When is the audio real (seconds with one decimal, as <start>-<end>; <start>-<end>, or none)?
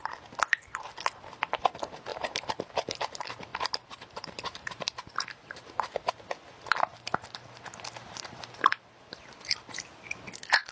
0.0-2.1; 3.0-3.5; 6.1-6.9; 8.4-10.7